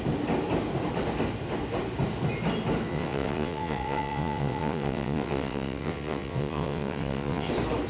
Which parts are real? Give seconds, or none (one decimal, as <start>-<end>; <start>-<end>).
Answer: 0.0-2.9; 7.5-7.9